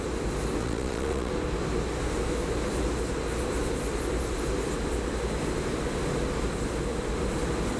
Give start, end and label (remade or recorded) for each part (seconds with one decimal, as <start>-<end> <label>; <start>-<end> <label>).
0.0-0.6 recorded; 0.6-1.3 remade; 1.3-7.8 recorded